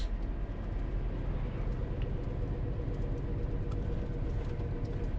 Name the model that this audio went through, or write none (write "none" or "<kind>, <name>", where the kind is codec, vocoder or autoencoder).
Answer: none